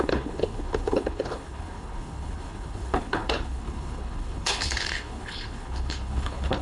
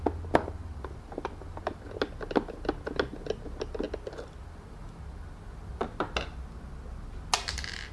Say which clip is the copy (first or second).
first